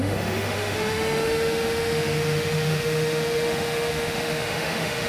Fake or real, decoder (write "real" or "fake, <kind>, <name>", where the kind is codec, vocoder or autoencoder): fake, autoencoder, DAC-VAE